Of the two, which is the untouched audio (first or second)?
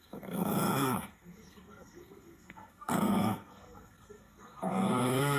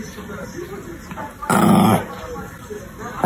second